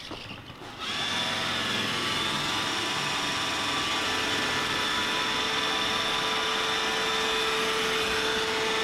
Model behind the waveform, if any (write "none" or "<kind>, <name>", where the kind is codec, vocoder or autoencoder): none